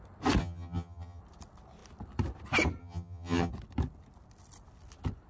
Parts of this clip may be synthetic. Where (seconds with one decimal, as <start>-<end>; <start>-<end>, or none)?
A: 0.4-1.2; 2.8-3.5

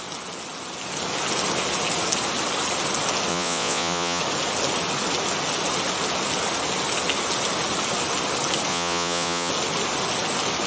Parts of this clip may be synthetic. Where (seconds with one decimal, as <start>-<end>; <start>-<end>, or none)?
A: 3.3-4.2; 8.7-9.5